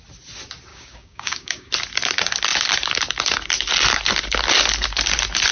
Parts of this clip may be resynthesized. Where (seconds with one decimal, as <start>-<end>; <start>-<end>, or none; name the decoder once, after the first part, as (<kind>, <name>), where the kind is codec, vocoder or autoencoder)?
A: 0.7-1.7 (codec, DAC)